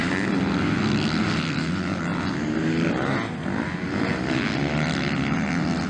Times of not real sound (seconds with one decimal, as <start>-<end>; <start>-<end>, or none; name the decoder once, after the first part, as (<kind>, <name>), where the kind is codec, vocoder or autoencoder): none